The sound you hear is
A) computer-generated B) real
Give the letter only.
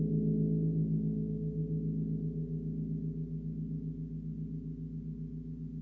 B